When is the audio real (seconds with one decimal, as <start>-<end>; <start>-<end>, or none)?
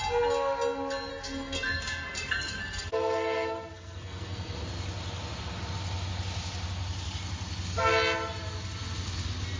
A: 0.0-1.1; 4.6-9.6